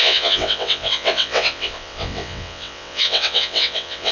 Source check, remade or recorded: remade